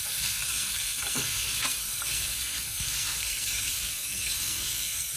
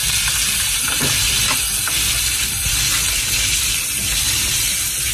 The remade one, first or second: first